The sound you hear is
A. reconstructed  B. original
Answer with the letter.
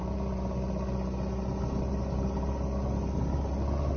B